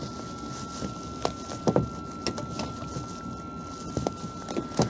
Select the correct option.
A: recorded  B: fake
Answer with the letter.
A